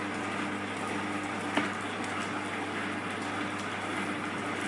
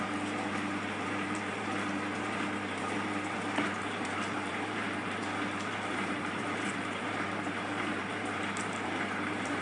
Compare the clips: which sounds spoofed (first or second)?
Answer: second